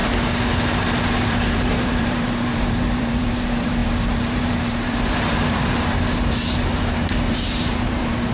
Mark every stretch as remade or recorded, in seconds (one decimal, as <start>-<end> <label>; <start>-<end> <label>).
0.0-1.2 recorded; 1.2-8.3 remade